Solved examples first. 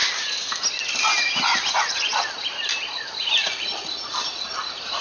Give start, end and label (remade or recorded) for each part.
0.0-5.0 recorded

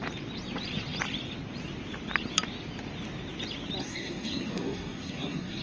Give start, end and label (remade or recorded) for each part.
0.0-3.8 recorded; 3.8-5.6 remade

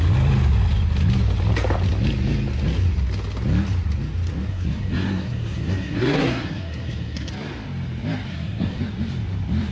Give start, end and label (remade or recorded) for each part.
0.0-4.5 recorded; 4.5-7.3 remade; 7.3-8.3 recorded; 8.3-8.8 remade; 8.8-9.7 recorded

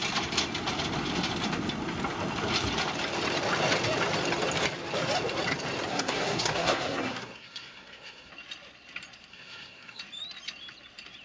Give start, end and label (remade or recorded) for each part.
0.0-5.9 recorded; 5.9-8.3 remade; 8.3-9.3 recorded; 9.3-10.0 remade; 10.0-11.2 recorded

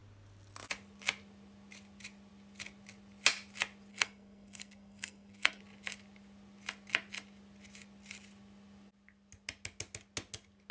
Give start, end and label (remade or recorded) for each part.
0.0-3.9 recorded; 3.9-5.6 remade; 5.6-10.7 recorded

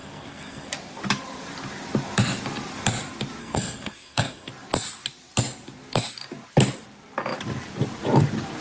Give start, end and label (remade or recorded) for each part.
0.0-0.7 remade; 0.7-3.4 recorded; 3.4-4.5 remade; 4.5-8.6 recorded